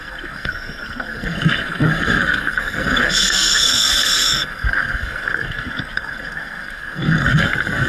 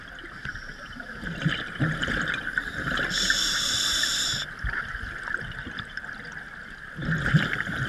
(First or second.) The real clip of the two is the second